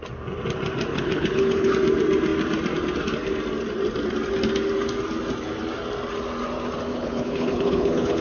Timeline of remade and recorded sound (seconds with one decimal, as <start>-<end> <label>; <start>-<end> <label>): 0.0-0.9 recorded; 0.9-1.7 remade; 1.7-6.9 recorded; 6.9-8.2 remade